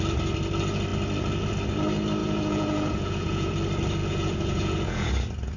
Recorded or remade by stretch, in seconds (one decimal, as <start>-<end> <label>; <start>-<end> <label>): 0.0-2.2 recorded; 2.2-3.5 remade; 3.5-4.0 recorded; 4.0-5.1 remade; 5.1-5.6 recorded